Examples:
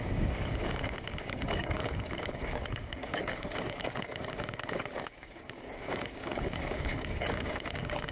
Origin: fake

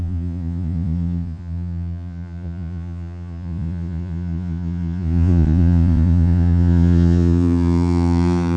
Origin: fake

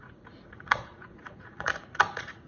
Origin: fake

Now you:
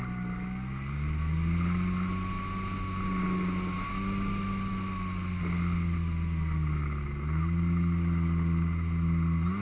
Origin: real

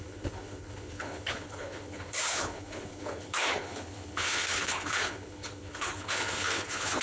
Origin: fake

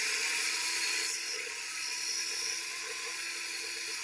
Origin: fake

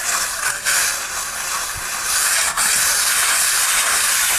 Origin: real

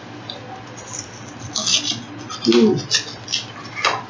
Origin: real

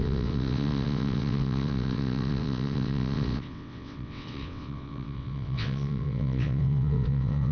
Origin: fake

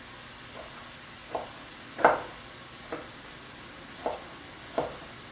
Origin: real